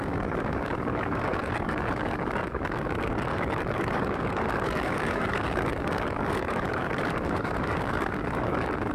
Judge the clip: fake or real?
fake